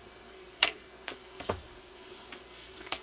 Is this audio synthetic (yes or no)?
yes